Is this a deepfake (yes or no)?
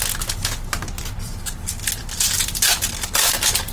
no